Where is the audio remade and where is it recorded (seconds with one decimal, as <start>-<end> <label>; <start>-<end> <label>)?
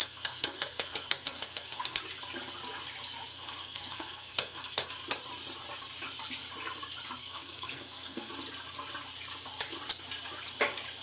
0.0-2.0 remade; 2.0-3.3 recorded; 3.3-4.9 remade; 4.9-7.2 recorded; 7.2-8.3 remade; 8.3-11.0 recorded